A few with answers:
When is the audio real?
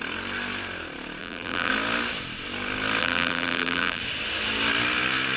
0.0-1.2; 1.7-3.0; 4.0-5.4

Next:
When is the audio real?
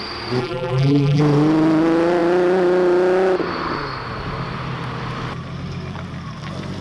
0.0-0.4; 1.2-6.8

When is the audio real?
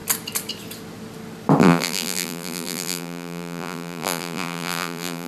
0.0-1.6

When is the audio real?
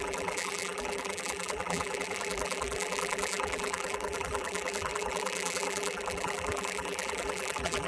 none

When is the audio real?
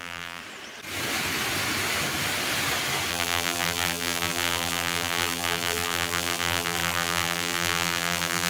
0.4-3.1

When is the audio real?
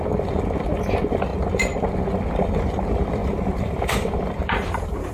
none